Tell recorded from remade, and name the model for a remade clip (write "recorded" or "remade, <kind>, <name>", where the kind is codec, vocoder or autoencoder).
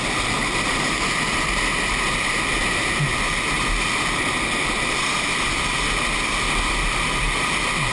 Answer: recorded